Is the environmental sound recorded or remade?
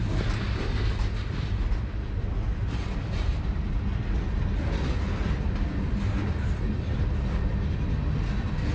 recorded